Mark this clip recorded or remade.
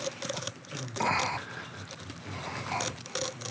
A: recorded